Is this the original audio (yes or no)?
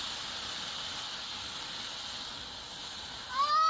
yes